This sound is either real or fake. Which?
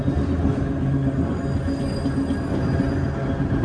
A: real